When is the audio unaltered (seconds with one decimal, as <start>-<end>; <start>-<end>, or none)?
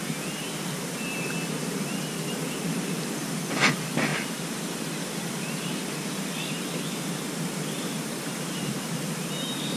0.0-9.8